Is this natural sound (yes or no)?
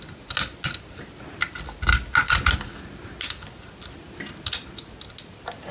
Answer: yes